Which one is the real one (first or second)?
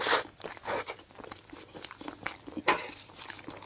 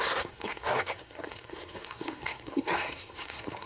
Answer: first